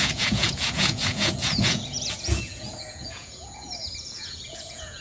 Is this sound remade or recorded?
remade